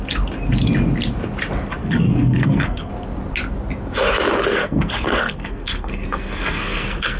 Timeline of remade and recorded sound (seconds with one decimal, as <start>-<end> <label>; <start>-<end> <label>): 0.0-1.8 recorded; 1.8-2.9 remade; 2.9-4.5 recorded; 4.5-7.2 remade

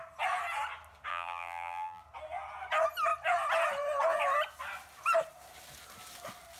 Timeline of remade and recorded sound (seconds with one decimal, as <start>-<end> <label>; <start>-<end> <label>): 0.0-1.1 recorded; 1.1-2.0 remade; 2.0-6.6 recorded

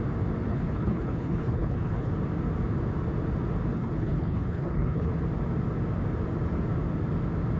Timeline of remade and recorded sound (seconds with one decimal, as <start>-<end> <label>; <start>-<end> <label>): 0.0-0.5 recorded; 0.5-2.1 remade; 2.1-3.7 recorded; 3.7-5.1 remade; 5.1-7.6 recorded

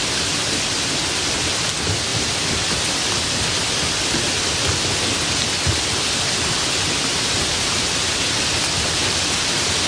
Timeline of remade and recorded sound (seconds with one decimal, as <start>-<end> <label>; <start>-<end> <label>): 0.0-9.9 recorded

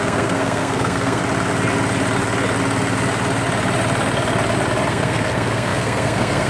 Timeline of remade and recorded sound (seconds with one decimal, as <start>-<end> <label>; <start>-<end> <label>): 0.0-1.2 remade; 1.2-4.9 recorded; 4.9-6.5 remade